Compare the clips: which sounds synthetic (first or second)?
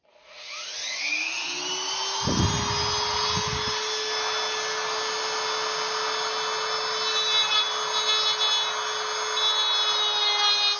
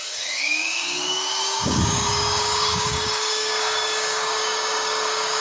second